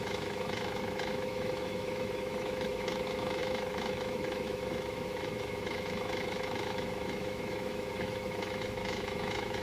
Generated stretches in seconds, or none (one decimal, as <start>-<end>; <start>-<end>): 0.0-9.6